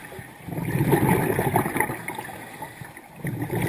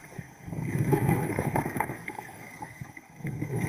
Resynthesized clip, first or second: second